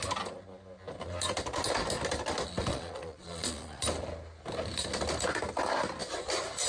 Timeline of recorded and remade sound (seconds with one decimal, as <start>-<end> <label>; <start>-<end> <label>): 0.0-2.7 recorded; 2.7-3.8 remade; 3.8-6.7 recorded

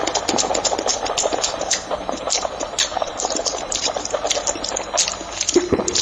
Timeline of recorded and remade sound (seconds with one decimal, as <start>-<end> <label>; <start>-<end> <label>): 0.0-0.9 recorded; 0.9-3.9 remade; 3.9-6.0 recorded

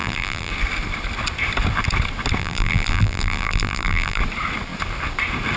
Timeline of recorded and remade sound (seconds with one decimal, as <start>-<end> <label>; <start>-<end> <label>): 0.0-0.5 remade; 0.5-2.4 recorded; 2.4-4.2 remade; 4.2-5.6 recorded

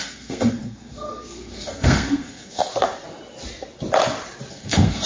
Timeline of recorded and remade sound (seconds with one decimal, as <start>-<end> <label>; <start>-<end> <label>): 0.0-2.7 remade; 2.7-4.5 recorded; 4.5-5.1 remade